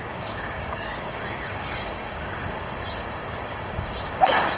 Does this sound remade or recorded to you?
remade